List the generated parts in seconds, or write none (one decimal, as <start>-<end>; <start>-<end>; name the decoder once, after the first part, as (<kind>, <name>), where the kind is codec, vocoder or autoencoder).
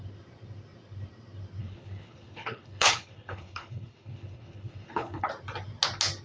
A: 1.6-5.3 (codec, HILCodec)